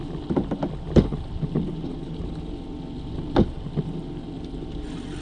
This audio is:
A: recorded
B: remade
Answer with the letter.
A